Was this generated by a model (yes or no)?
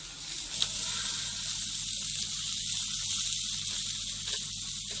no